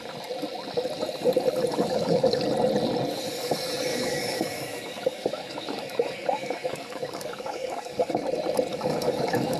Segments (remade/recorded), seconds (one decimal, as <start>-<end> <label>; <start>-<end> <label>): 0.0-1.7 recorded; 1.7-2.4 remade; 2.4-3.9 recorded; 3.9-8.2 remade; 8.2-8.7 recorded; 8.7-9.6 remade